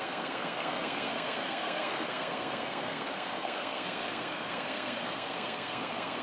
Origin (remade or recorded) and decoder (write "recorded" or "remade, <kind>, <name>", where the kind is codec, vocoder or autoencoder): remade, codec, SNAC